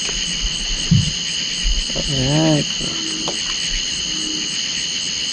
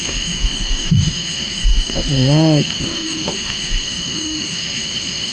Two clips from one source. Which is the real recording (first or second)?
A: first